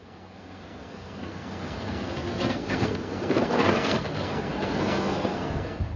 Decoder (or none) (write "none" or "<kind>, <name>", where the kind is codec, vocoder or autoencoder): codec, SNAC